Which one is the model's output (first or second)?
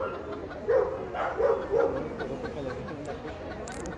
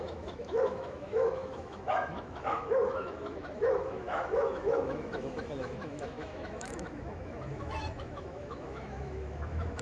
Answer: second